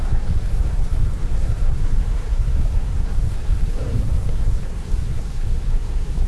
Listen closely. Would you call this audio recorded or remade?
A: remade